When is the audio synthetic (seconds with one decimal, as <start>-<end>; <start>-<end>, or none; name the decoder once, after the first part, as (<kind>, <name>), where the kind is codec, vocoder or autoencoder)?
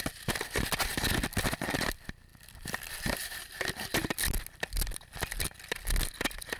none